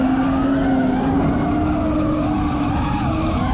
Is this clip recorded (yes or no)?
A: yes